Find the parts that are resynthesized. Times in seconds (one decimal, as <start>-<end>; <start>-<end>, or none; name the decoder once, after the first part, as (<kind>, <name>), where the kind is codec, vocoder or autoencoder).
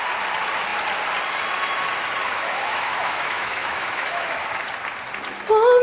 2.2-4.6 (autoencoder, DAC-VAE)